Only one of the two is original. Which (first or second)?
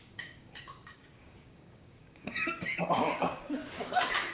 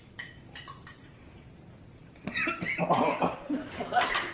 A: second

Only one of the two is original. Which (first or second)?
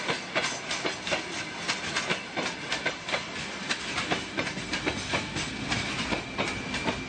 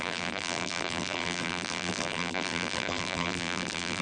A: first